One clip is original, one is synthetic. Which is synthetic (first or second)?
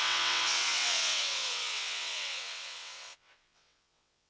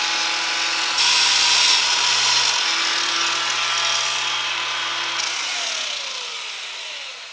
first